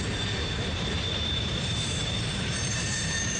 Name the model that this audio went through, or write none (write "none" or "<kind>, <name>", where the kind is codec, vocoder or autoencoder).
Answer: vocoder, BigVGAN v2